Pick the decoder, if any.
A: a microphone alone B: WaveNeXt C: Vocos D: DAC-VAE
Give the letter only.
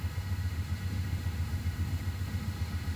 D